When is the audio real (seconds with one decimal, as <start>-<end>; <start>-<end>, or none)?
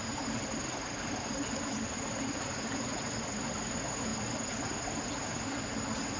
0.0-6.2